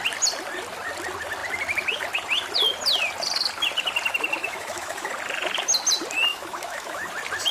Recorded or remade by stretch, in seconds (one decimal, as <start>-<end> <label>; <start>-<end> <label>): 0.0-4.4 recorded; 4.4-5.1 remade; 5.1-6.3 recorded; 6.3-7.1 remade; 7.1-7.5 recorded